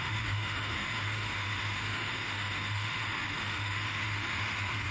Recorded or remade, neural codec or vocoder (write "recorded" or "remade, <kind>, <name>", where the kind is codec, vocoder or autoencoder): remade, autoencoder, DAC-VAE